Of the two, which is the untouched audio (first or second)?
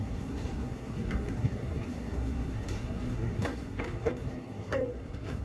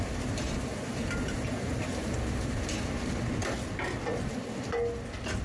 second